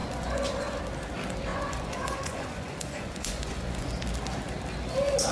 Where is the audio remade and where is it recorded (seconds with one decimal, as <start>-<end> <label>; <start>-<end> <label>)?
0.0-0.8 remade; 0.8-1.5 recorded; 1.5-3.9 remade; 3.9-5.3 recorded